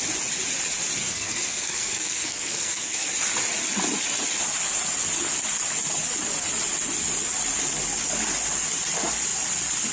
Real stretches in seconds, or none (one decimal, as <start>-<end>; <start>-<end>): 0.0-1.0; 3.1-9.9